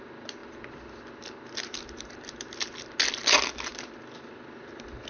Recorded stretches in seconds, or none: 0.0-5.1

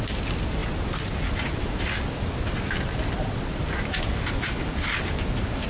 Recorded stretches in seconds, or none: 0.0-5.7

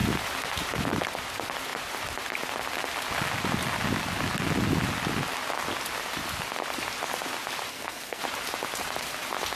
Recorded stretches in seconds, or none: 0.0-7.7; 8.2-9.6

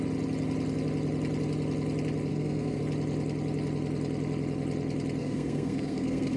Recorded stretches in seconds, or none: 0.0-2.3; 2.8-5.2

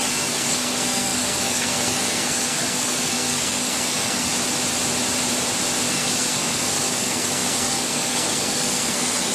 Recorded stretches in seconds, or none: 4.3-5.9